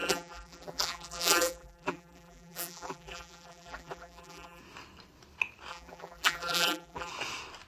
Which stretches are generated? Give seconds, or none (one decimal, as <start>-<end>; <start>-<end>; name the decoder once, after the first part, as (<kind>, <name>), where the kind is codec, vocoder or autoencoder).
0.0-4.6 (vocoder, BigVGAN v2); 5.7-7.1